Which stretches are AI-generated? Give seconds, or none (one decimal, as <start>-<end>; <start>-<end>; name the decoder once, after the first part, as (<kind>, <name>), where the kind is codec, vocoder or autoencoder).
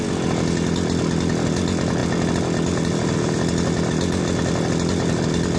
none